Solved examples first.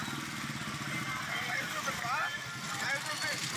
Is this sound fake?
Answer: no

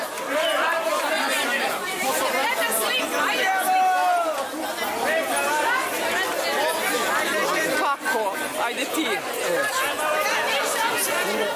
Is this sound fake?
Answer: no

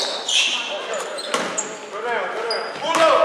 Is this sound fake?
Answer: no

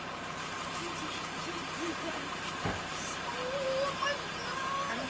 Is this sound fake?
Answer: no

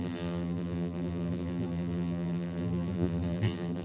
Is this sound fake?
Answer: yes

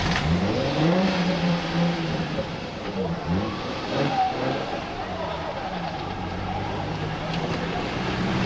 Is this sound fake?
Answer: yes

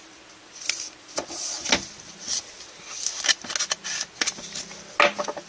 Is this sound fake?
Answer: no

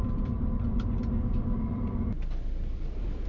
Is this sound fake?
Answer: yes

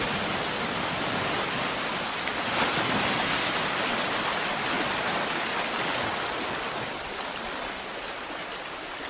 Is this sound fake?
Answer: no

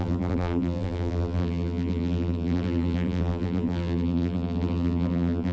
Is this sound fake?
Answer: yes